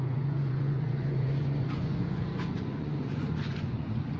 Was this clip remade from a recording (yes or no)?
yes